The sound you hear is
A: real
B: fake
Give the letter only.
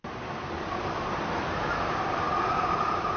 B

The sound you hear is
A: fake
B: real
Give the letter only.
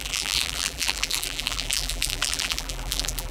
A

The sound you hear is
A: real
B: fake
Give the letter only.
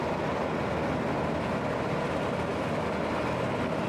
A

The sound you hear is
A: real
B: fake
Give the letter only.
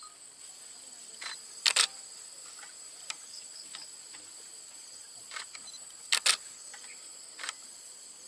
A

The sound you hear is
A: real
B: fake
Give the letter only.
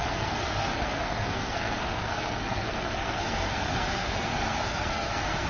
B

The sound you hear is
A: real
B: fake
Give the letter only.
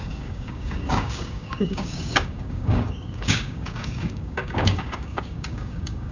B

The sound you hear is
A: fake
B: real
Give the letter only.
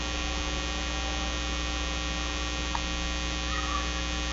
B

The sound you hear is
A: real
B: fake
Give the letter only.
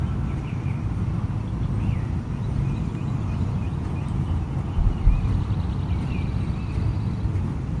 A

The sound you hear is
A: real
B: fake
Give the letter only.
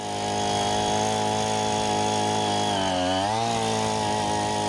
A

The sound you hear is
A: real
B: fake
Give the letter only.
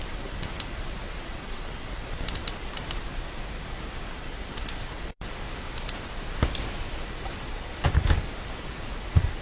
B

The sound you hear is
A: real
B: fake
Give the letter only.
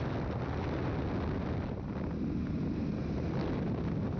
A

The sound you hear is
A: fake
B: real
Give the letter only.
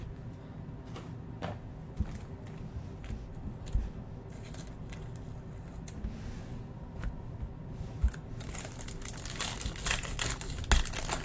B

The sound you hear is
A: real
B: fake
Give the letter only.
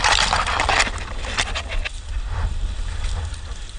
A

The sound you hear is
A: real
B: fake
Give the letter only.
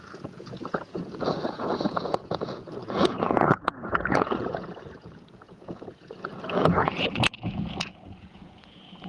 B